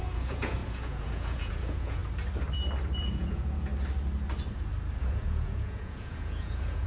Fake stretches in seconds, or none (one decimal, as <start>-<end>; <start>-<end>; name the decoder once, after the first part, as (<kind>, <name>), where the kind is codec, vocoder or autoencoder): 0.0-2.0 (vocoder, Vocos); 3.0-3.7; 5.0-6.9